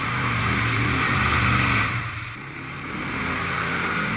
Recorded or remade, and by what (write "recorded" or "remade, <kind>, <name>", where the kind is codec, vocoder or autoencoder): remade, vocoder, BigVGAN v2